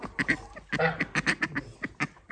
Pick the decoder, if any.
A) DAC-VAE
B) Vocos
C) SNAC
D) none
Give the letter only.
D